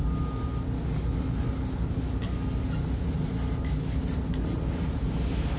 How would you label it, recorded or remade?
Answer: recorded